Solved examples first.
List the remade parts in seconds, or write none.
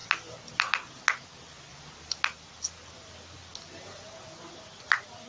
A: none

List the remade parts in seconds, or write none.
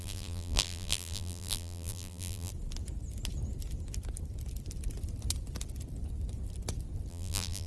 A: 0.0-2.5 (vocoder, BigVGAN v2); 7.1-7.7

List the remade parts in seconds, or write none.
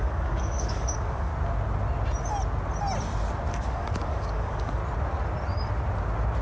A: 0.0-1.3 (codec, DAC); 3.5-4.8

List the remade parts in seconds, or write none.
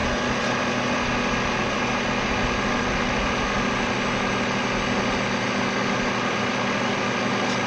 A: none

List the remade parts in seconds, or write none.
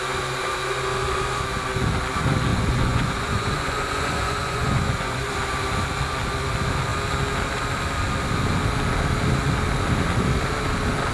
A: 2.5-5.3 (vocoder, Vocos)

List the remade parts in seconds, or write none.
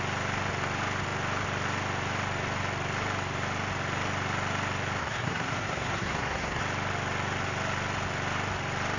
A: 5.0-6.6 (codec, SNAC)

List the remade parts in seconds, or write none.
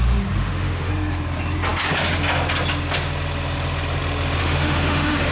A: 0.4-0.9 (autoencoder, DAC-VAE); 4.4-5.3